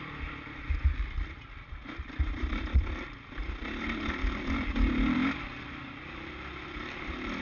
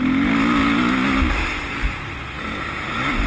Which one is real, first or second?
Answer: second